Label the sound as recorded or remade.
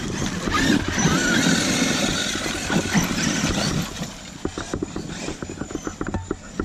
recorded